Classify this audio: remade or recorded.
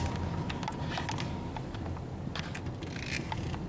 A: recorded